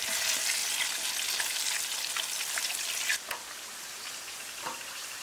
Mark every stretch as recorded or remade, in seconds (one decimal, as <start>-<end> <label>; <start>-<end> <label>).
0.0-5.2 recorded